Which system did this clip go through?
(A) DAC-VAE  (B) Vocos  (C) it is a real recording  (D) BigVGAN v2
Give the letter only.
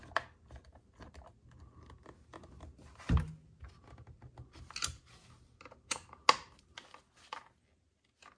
C